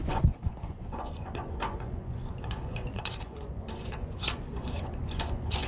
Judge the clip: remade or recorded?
remade